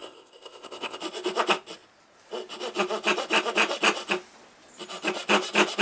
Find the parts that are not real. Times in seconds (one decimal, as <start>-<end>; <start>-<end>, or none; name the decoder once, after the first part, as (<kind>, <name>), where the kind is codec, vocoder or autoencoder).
0.0-1.0 (codec, ZipCodec)